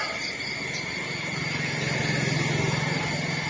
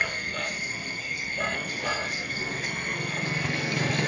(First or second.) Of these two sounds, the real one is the first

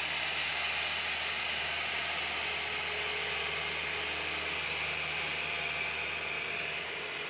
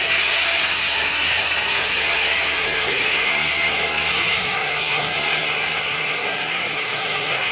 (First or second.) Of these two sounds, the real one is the first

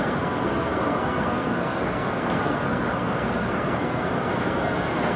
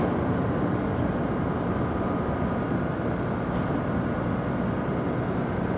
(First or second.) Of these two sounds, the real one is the second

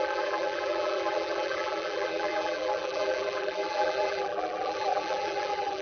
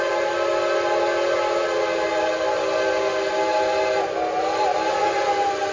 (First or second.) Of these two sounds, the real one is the second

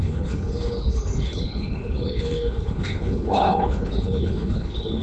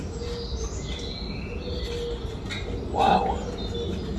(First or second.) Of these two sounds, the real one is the second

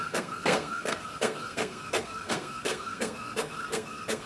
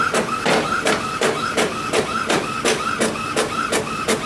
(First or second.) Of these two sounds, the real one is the second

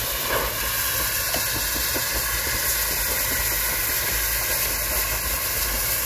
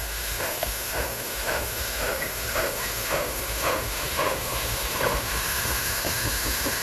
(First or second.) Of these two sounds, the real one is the first